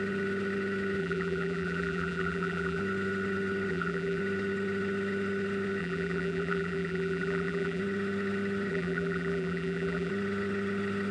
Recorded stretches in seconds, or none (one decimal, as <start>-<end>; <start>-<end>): 0.0-1.0; 2.8-3.7; 4.2-5.8; 7.8-8.7; 10.1-11.1